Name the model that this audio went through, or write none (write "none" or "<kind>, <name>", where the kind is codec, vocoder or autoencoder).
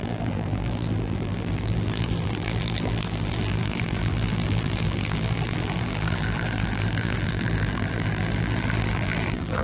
vocoder, BigVGAN v2